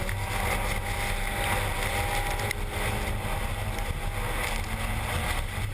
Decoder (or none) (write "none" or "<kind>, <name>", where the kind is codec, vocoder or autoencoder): none